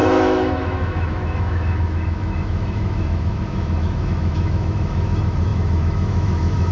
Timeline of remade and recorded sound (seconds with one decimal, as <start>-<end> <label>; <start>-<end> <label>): 0.0-6.7 remade